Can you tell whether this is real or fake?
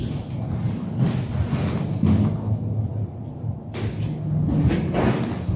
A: real